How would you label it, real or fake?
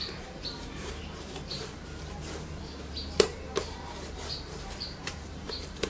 fake